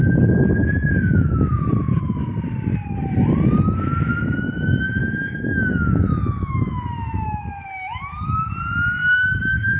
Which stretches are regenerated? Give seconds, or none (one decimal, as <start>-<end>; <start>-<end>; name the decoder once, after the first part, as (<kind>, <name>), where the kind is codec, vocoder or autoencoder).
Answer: 1.1-1.7 (autoencoder, DAC-VAE); 5.0-8.5; 9.0-9.8